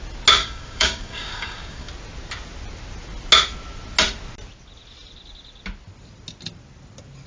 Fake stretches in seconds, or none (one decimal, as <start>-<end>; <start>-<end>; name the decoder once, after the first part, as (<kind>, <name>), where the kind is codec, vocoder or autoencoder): 0.4-1.9 (codec, DAC)